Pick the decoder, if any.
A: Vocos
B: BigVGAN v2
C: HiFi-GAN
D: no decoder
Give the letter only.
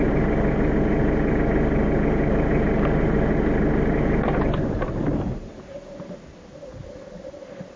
D